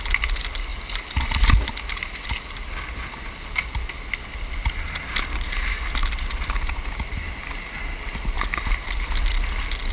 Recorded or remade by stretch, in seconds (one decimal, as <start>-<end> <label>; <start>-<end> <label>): 0.0-9.9 recorded